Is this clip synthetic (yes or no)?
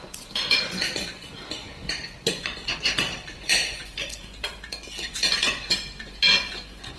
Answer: yes